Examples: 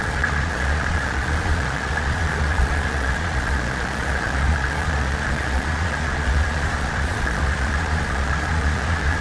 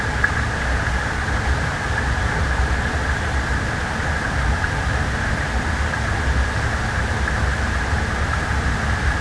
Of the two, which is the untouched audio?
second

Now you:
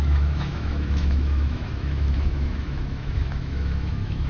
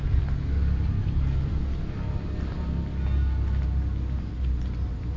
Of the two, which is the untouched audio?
second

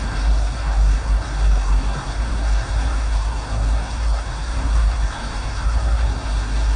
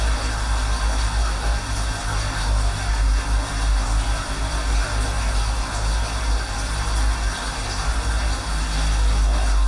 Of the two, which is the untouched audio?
second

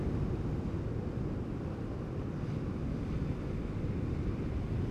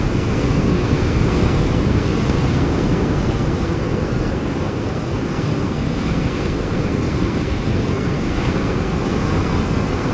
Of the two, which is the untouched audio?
first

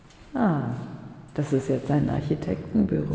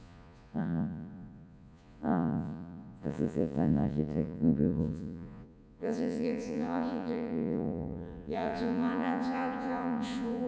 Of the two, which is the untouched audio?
first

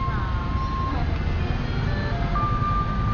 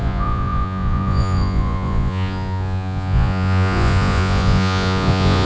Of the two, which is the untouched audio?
first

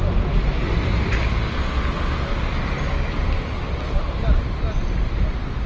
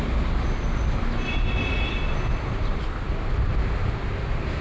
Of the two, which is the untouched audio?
second